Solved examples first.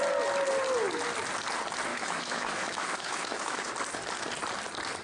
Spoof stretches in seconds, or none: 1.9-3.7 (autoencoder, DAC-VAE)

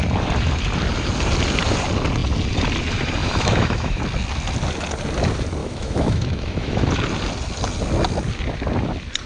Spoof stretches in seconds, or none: 3.2-4.0 (autoencoder, DAC-VAE); 5.6-6.9

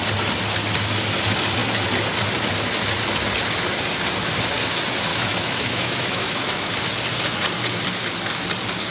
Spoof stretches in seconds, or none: 5.1-6.7 (autoencoder, DAC-VAE)

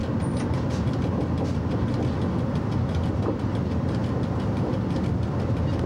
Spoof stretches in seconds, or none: none

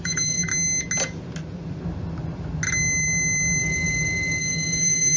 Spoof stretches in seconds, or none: 0.0-0.5 (autoencoder, DAC-VAE); 3.6-5.2

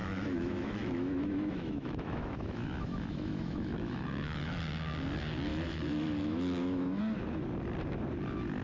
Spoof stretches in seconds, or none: 0.0-4.6 (autoencoder, DAC-VAE); 5.5-7.0